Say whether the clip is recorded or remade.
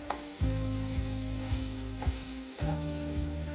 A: remade